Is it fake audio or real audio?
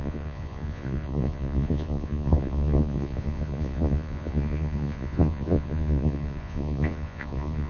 fake